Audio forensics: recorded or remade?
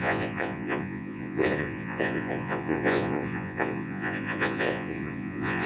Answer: remade